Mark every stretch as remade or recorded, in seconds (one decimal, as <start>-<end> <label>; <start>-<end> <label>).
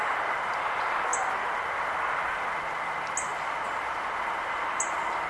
0.0-5.3 recorded